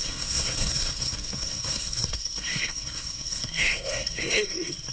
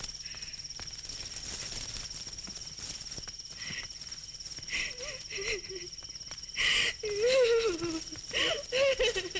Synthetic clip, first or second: first